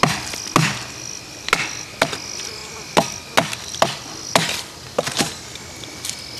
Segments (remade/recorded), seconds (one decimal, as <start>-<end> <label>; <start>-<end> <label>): 0.0-6.4 recorded